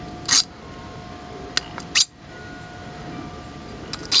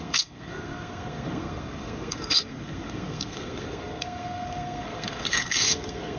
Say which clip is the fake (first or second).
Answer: second